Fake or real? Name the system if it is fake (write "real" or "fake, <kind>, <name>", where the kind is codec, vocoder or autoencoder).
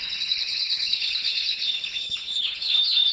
fake, codec, HILCodec